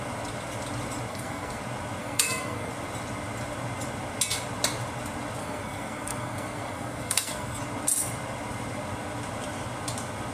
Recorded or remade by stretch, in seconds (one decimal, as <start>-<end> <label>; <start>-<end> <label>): 0.0-1.1 recorded; 1.1-1.6 remade; 1.6-2.0 recorded; 2.0-2.7 remade; 2.7-5.4 recorded; 5.4-7.6 remade; 7.6-10.3 recorded